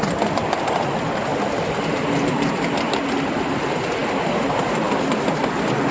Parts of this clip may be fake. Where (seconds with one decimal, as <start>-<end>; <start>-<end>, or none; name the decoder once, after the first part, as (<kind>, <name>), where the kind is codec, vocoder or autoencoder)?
none